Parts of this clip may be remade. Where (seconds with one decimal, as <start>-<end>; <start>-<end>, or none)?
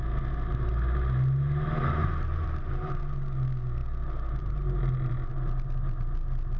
2.0-3.0